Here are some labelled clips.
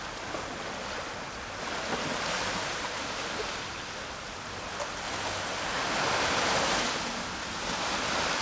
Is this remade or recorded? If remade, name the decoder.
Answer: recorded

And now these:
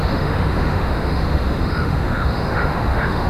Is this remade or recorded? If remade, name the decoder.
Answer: remade, autoencoder, DAC-VAE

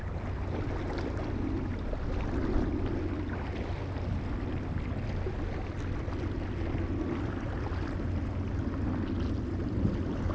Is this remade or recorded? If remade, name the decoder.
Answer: recorded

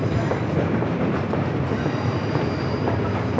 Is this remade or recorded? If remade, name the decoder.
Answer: remade, vocoder, BigVGAN v2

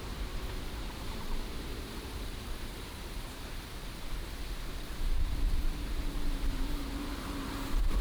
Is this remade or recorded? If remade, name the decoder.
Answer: remade, vocoder, BigVGAN v2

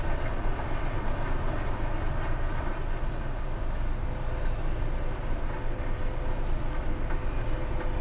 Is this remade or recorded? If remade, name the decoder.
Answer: recorded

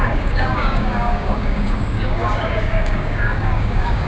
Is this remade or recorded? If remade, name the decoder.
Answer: remade, codec, DAC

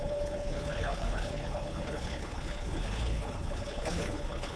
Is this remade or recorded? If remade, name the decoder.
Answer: remade, codec, HILCodec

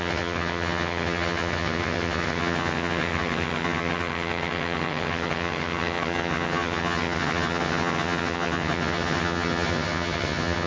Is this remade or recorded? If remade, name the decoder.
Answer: remade, vocoder, HiFi-GAN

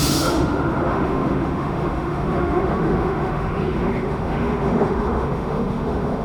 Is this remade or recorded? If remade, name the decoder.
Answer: remade, autoencoder, DAC-VAE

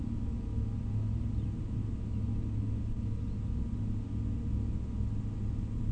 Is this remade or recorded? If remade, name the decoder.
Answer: recorded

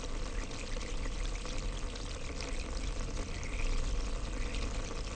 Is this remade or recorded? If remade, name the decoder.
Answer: recorded